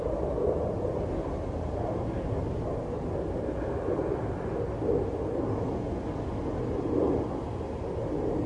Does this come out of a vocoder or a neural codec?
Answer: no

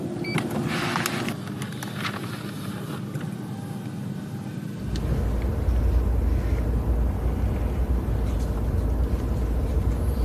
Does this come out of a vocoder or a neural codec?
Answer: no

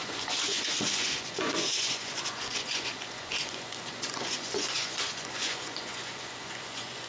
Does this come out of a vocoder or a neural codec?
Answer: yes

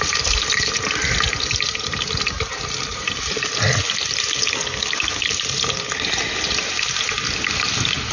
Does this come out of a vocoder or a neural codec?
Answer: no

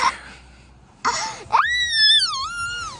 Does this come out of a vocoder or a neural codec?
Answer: no